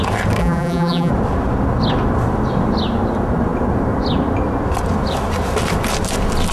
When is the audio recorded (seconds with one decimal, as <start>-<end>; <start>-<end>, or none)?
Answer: 0.0-0.4; 1.1-6.5